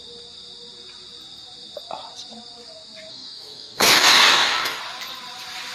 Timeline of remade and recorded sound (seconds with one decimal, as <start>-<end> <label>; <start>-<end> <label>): 0.0-3.1 recorded; 3.1-4.8 remade; 4.8-5.7 recorded